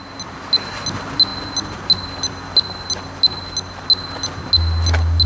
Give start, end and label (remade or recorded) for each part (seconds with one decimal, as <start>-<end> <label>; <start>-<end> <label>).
0.0-5.3 recorded